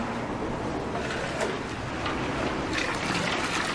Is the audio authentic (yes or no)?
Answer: yes